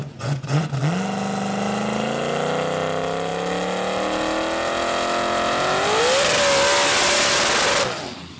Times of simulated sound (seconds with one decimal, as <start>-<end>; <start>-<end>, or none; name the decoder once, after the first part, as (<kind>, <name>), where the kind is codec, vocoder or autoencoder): 0.0-0.8 (vocoder, Vocos)